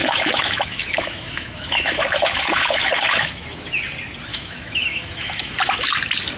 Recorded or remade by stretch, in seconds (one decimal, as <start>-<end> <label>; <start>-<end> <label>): 0.0-3.8 remade; 3.8-4.3 recorded; 4.3-5.9 remade; 5.9-6.4 recorded